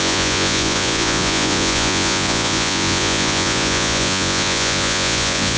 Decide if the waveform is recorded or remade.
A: remade